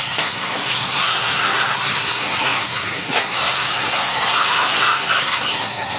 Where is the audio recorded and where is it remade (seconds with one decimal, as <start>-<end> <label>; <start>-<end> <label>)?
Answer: 0.0-6.0 remade